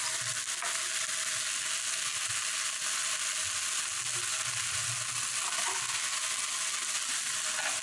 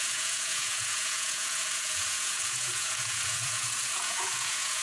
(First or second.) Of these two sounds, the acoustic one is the first